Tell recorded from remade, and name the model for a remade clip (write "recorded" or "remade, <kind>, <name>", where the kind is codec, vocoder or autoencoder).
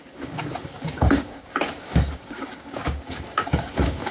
remade, codec, DAC